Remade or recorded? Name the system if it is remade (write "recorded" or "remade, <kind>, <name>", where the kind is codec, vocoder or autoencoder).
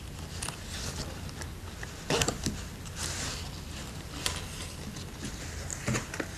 recorded